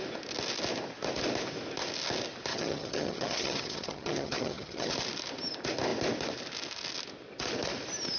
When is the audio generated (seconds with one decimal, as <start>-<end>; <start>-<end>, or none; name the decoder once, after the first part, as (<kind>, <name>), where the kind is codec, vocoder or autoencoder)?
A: 2.5-4.9 (vocoder, HiFi-GAN)